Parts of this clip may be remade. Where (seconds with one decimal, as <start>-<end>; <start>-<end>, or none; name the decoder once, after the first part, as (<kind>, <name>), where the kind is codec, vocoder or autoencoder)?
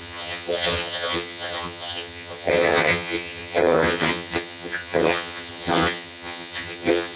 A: 0.0-7.2 (vocoder, HiFi-GAN)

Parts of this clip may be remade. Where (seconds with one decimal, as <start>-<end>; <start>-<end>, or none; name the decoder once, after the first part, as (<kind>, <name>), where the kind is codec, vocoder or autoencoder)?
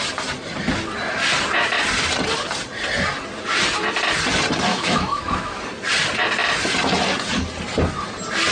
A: 4.7-5.6 (autoencoder, DAC-VAE)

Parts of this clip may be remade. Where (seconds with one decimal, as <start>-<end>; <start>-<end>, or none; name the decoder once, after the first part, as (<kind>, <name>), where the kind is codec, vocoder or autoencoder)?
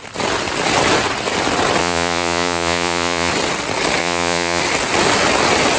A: 1.8-3.3 (vocoder, Vocos); 4.0-4.6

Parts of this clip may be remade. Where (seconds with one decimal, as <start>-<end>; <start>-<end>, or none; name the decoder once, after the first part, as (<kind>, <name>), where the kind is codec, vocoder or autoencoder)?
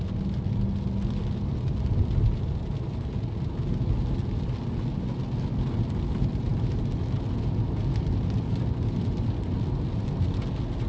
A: none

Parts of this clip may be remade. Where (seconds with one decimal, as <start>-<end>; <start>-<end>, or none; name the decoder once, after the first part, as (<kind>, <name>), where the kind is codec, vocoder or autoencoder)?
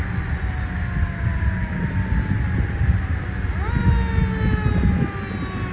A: none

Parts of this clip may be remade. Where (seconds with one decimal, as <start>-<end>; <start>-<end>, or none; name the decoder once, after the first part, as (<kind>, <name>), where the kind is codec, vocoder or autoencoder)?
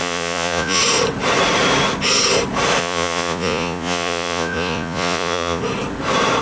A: 0.0-0.8 (vocoder, Vocos); 2.8-5.6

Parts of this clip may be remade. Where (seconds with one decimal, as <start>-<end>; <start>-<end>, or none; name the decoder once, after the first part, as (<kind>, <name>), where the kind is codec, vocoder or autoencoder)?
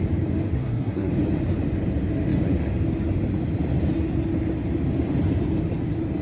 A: 0.5-1.1 (codec, SNAC)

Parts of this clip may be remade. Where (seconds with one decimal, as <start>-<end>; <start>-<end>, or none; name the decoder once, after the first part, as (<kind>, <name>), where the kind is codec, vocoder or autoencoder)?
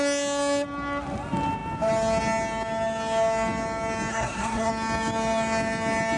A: 4.1-4.7 (codec, SNAC)